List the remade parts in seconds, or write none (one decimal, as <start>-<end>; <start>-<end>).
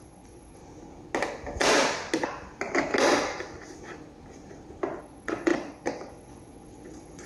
0.0-0.6; 5.0-7.3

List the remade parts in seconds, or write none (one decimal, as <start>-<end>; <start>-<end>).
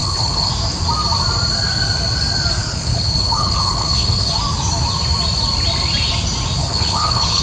0.0-0.5; 2.6-4.3; 6.6-7.4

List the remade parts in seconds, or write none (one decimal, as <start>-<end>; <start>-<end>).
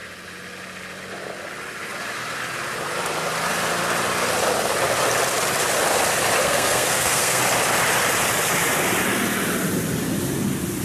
6.4-7.4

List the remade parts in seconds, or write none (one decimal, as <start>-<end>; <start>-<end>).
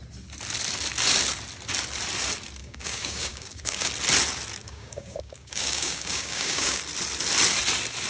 2.6-3.9; 4.6-6.8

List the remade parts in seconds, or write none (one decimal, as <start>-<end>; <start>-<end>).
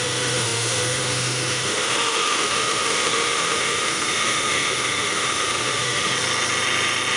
0.0-6.1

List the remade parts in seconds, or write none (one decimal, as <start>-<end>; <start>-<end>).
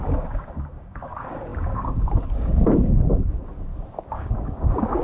0.0-3.7; 4.2-5.0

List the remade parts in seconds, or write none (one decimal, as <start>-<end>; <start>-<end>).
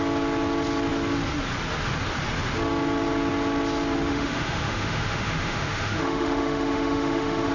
4.1-7.5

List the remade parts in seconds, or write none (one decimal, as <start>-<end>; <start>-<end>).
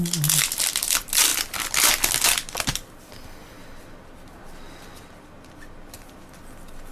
none